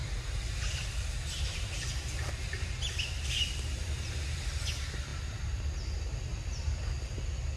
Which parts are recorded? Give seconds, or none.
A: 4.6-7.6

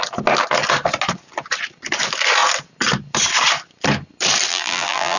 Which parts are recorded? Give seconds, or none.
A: 0.0-4.5

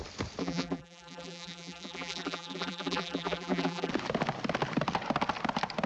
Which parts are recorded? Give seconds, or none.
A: 0.0-0.4; 3.9-5.9

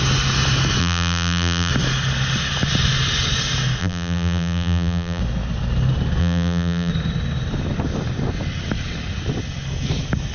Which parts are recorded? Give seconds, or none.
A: 0.0-0.8; 1.7-3.8; 5.2-6.2; 6.9-10.3